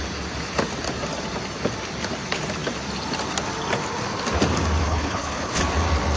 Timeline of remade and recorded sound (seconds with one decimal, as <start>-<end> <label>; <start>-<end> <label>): 0.0-4.8 recorded; 4.8-5.6 remade; 5.6-6.2 recorded